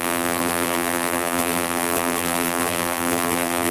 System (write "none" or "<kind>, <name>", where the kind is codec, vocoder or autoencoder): vocoder, BigVGAN v2